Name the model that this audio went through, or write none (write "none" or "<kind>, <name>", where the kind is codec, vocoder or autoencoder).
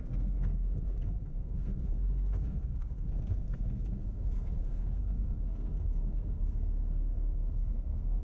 codec, SNAC